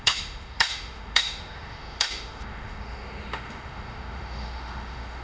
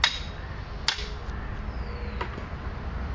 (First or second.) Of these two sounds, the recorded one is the second